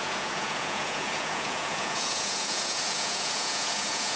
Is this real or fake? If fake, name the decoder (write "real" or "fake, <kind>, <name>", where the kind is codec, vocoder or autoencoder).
fake, vocoder, Vocos